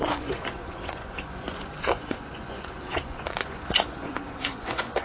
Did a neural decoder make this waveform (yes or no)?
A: yes